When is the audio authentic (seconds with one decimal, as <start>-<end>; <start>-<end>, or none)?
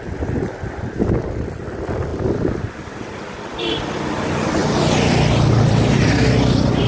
none